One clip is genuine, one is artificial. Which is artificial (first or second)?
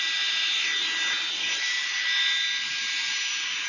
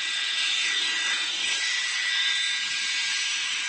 second